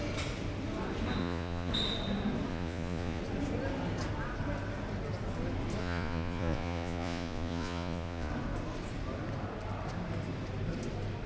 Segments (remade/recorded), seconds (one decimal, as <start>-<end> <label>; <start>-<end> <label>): 0.0-1.2 recorded; 1.2-1.7 remade; 1.7-2.5 recorded; 2.5-3.2 remade; 3.2-5.8 recorded; 5.8-8.3 remade; 8.3-11.3 recorded